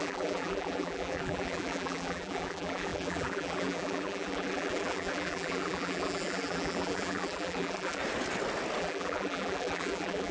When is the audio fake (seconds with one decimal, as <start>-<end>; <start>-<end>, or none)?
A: 0.0-8.0; 8.8-10.3